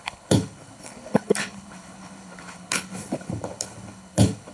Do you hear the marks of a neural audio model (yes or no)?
yes